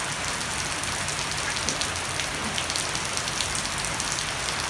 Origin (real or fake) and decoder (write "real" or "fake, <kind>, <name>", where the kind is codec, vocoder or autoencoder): real